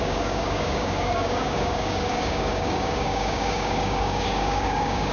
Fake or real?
fake